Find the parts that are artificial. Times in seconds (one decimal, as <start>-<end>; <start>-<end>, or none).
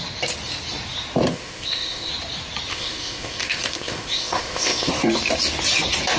1.3-2.1; 2.7-4.9